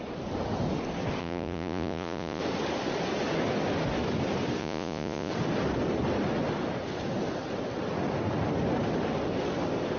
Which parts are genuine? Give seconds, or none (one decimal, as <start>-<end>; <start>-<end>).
0.0-1.2; 2.4-4.6; 5.3-10.0